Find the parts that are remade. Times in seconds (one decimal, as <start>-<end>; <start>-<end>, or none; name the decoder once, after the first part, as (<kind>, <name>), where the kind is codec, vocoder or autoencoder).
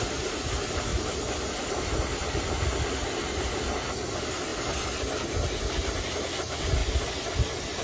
none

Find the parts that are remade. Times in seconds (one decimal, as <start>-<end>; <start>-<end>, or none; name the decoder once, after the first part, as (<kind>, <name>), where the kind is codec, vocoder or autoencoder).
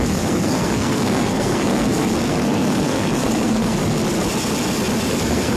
0.0-4.0 (codec, SNAC); 5.1-5.6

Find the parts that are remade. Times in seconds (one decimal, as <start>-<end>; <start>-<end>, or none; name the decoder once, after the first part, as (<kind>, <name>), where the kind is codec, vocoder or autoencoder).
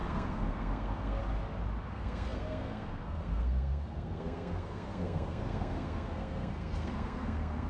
0.0-1.2 (codec, SNAC); 1.9-7.7